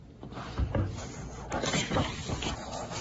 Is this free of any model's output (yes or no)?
yes